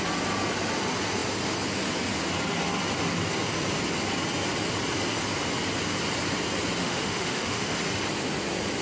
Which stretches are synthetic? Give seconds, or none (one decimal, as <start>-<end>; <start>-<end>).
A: 6.8-7.7